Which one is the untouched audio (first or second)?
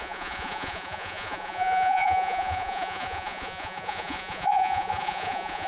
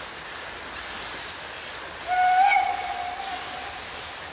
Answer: second